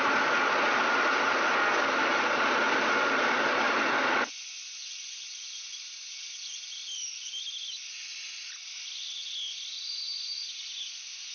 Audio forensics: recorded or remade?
recorded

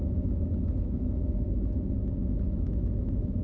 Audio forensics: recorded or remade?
remade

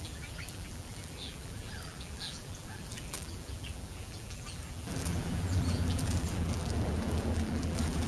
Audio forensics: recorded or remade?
remade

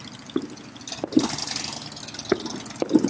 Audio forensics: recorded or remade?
recorded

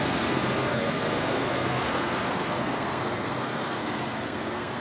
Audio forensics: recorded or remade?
remade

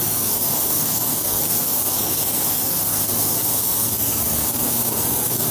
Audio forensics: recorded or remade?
remade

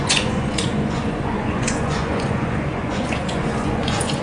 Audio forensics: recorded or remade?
remade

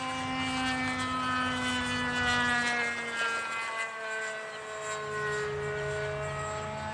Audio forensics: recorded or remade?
recorded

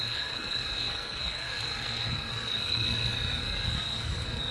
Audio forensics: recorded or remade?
remade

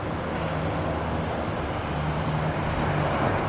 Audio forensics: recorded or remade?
recorded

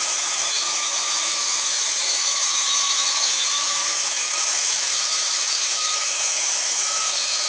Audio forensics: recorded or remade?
remade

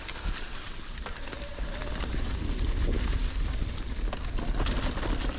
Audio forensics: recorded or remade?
recorded